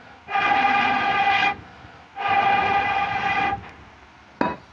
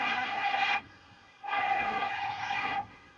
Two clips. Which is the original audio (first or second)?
first